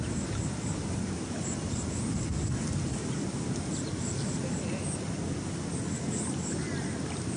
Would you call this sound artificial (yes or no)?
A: no